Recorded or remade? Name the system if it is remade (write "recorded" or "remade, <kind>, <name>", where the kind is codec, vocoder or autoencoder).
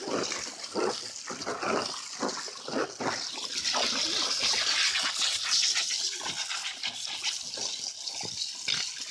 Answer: recorded